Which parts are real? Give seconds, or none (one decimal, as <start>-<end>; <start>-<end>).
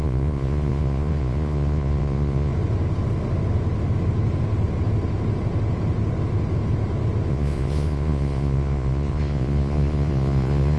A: 2.5-7.3